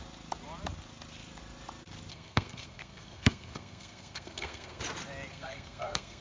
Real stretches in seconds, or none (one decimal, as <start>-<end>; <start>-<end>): 0.0-2.1; 4.8-5.3